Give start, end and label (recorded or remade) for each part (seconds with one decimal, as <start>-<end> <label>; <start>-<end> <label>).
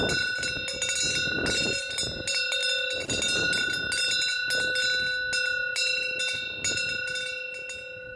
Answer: 0.0-8.2 recorded